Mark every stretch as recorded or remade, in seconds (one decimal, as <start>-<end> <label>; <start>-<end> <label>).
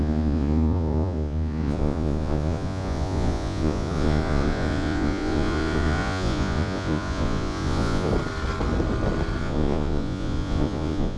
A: 0.0-8.1 remade; 8.1-9.4 recorded; 9.4-11.2 remade